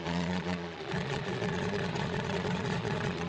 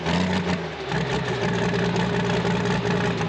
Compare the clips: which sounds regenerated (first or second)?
first